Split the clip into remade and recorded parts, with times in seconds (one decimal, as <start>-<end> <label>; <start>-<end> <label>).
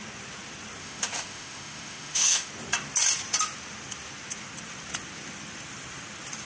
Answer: 0.0-0.8 recorded; 0.8-2.5 remade; 2.5-6.5 recorded